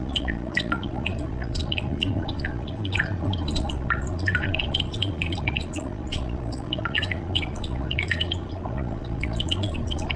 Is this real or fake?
fake